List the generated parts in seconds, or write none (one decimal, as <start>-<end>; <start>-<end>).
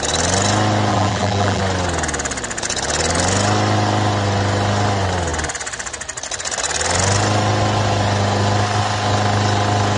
0.9-1.6